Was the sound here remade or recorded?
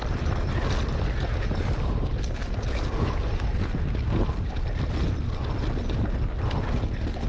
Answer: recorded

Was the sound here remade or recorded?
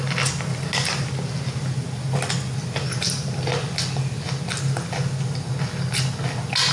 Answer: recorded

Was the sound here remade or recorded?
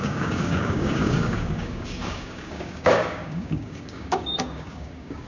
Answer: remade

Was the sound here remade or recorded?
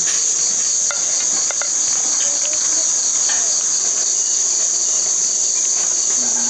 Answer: recorded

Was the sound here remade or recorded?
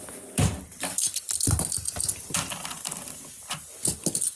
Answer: recorded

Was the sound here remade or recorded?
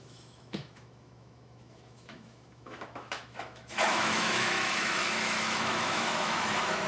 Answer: remade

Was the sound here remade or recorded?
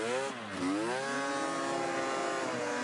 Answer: recorded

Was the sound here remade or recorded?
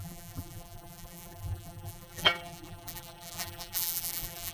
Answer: remade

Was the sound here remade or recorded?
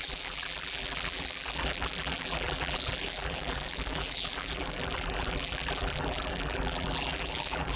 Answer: remade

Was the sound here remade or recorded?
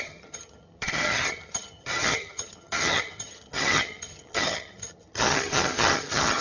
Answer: remade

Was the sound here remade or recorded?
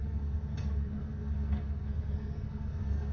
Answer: remade